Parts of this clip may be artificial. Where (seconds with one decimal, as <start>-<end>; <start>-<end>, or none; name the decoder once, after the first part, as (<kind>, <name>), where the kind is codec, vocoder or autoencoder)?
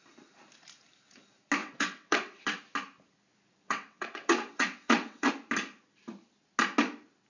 1.6-2.6 (vocoder, WaveNeXt); 3.6-5.3